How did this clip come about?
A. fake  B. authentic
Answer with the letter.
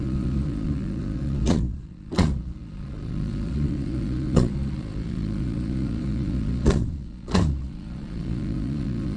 A